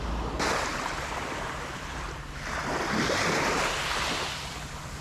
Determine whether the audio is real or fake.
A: real